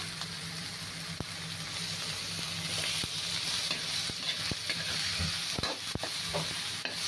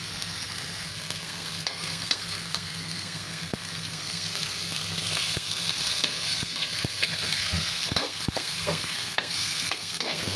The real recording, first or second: first